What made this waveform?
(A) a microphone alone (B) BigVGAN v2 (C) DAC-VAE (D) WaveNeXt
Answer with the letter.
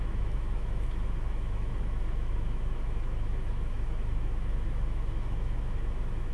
C